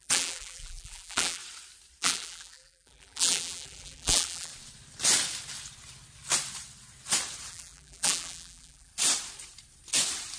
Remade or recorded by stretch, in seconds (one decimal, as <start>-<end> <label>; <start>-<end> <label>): 0.0-1.4 remade; 1.4-2.0 recorded; 2.0-4.5 remade; 4.5-7.5 recorded; 7.5-8.9 remade; 8.9-10.4 recorded